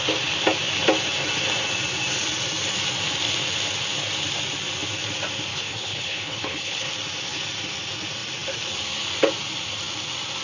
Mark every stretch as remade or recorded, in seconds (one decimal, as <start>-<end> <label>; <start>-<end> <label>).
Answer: 0.0-5.5 recorded; 5.5-6.9 remade; 6.9-10.4 recorded